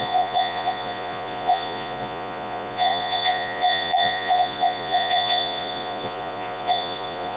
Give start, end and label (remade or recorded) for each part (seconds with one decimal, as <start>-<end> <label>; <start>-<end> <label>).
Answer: 0.0-7.4 remade